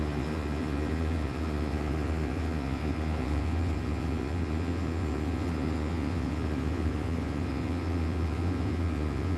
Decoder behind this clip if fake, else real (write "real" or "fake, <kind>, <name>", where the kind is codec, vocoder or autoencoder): fake, vocoder, Vocos